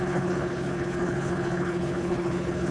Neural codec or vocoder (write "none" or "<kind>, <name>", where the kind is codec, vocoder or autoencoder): codec, HILCodec